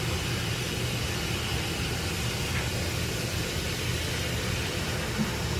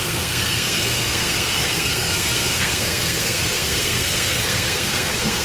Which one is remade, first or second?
second